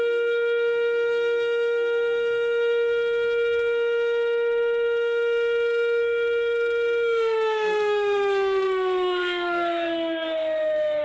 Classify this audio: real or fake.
fake